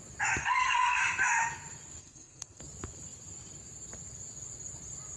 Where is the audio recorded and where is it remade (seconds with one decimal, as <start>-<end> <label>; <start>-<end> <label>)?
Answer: 0.0-0.4 recorded; 0.4-1.0 remade; 1.0-2.0 recorded; 2.0-2.6 remade; 2.6-5.2 recorded